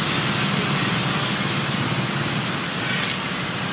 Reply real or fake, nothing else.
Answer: real